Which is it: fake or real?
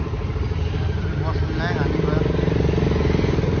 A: real